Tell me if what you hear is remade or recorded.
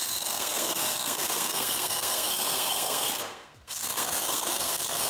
remade